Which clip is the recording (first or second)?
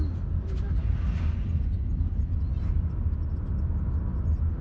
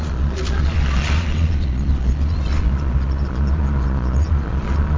first